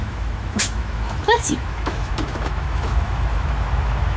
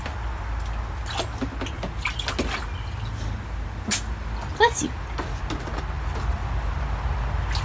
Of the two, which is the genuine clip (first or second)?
second